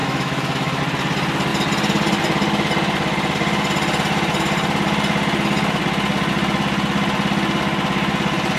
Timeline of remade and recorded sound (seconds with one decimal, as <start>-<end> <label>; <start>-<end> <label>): 0.0-0.8 remade; 0.8-8.6 recorded